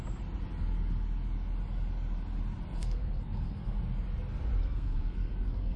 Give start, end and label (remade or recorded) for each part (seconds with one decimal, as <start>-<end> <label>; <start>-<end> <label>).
0.0-2.8 recorded; 2.8-3.8 remade; 3.8-4.6 recorded; 4.6-5.8 remade